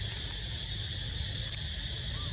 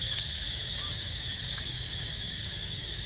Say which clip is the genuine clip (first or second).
first